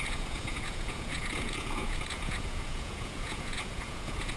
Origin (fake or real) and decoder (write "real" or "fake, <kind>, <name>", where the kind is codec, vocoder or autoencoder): fake, vocoder, Vocos